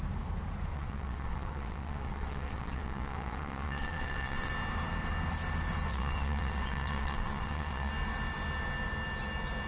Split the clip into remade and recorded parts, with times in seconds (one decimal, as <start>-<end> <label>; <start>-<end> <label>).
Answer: 0.0-0.7 recorded; 0.7-4.5 remade; 4.5-5.9 recorded; 5.9-7.9 remade; 7.9-9.7 recorded